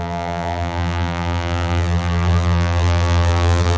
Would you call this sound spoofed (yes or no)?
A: yes